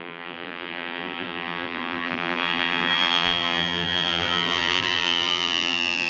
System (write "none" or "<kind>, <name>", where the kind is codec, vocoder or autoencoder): vocoder, BigVGAN v2